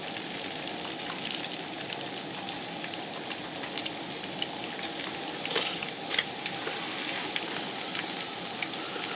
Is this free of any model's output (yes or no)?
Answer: yes